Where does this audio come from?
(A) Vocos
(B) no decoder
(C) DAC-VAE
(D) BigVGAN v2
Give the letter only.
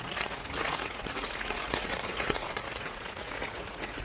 A